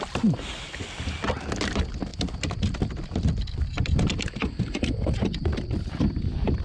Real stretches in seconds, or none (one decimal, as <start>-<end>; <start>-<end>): 0.0-2.1; 6.1-6.6

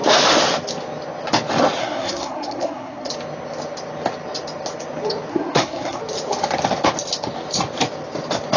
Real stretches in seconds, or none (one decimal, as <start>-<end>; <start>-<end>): 0.0-1.8; 3.1-5.3; 6.0-8.6

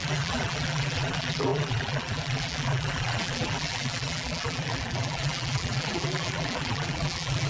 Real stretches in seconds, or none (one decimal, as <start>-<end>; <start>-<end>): none